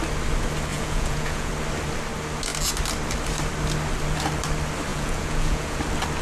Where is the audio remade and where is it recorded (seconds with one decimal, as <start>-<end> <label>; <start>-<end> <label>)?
0.0-0.7 recorded; 0.7-1.5 remade; 1.5-4.9 recorded; 4.9-5.8 remade; 5.8-6.2 recorded